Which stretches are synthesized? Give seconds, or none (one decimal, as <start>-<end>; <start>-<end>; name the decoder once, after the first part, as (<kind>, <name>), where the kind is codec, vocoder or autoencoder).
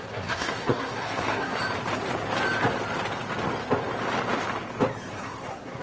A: 0.0-1.6 (codec, SNAC); 5.1-5.8